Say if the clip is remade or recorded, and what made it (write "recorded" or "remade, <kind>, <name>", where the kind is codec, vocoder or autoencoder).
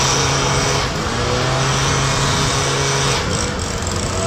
recorded